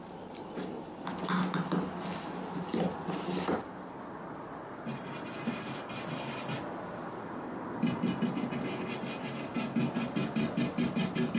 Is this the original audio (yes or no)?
yes